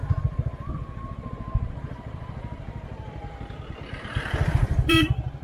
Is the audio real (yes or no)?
no